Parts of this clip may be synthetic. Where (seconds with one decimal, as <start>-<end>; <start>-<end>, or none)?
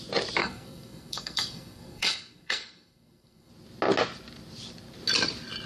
0.4-3.5